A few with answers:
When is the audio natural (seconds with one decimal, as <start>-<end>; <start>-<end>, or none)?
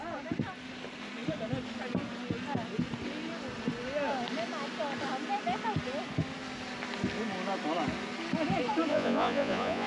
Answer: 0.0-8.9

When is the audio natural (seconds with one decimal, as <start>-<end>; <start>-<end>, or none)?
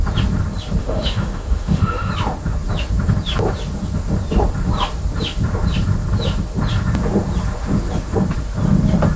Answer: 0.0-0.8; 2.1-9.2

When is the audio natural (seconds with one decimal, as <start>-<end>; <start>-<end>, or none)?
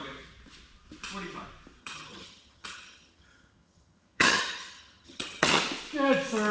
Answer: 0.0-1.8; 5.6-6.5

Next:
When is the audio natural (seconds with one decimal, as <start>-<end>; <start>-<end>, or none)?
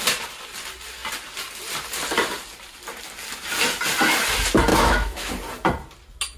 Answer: 0.0-4.7; 5.3-6.4